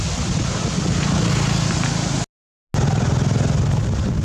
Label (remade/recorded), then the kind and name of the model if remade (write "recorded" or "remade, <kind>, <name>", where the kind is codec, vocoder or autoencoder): recorded